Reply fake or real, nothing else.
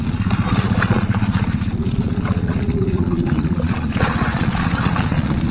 fake